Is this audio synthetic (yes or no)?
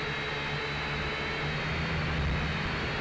no